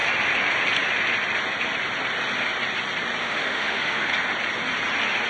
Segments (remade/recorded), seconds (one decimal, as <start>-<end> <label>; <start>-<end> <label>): 0.0-3.2 recorded; 3.2-4.1 remade; 4.1-5.3 recorded